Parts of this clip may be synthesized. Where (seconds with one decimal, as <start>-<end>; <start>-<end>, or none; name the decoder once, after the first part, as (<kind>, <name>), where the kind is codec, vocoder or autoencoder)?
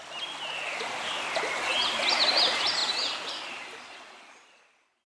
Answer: none